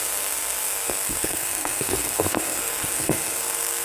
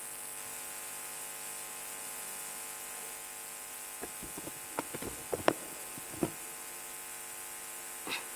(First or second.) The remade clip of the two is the first